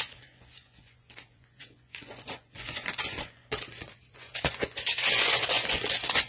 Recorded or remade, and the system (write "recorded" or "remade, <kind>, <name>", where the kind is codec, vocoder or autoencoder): remade, vocoder, Vocos